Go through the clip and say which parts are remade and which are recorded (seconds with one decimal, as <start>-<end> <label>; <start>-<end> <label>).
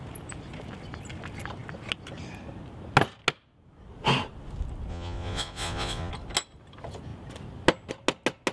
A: 0.0-4.9 recorded; 4.9-6.1 remade; 6.1-8.5 recorded